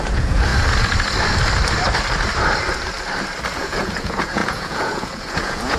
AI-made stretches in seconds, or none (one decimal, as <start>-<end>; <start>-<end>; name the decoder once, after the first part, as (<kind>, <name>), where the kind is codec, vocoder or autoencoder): 0.0-0.5 (vocoder, Vocos); 3.5-5.8